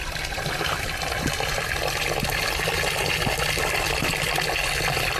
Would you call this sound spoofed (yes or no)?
no